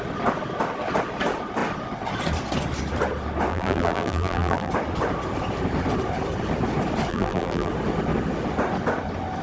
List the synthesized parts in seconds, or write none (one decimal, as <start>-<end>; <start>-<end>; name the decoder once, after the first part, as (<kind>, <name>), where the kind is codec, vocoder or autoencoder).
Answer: 3.5-4.7 (vocoder, BigVGAN v2); 7.1-7.7